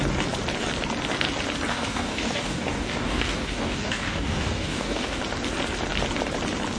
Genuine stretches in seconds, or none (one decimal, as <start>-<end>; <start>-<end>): 0.0-1.7; 5.2-6.8